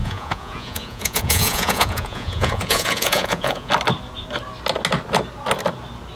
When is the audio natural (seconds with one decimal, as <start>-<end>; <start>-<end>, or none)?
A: 3.7-6.2